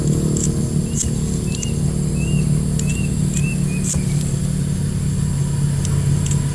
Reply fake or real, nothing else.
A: real